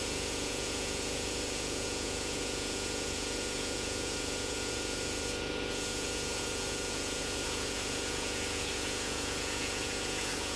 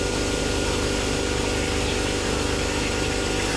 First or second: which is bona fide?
second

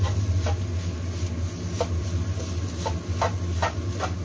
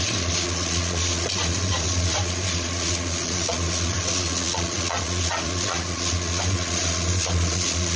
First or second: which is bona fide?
first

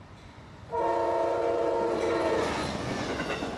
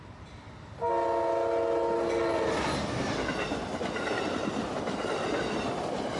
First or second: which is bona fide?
second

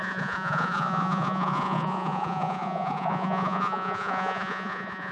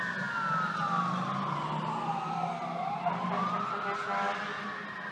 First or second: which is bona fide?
second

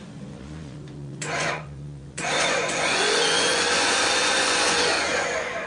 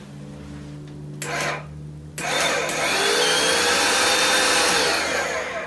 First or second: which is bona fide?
second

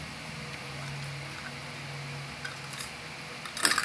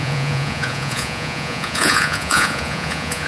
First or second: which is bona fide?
first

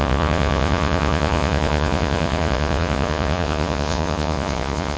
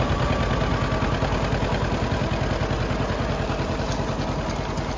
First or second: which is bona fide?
second